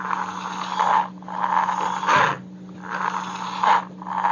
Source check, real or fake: real